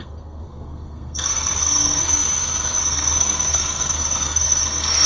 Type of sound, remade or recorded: remade